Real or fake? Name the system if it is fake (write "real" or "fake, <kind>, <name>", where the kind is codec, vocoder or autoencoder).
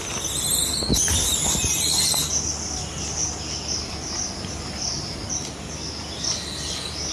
real